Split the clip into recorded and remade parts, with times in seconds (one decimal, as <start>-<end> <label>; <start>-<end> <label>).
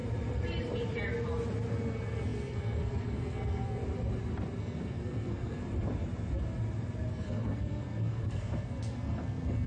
0.0-1.7 recorded; 1.7-3.8 remade; 3.8-4.6 recorded; 4.6-5.6 remade; 5.6-7.1 recorded; 7.1-9.7 remade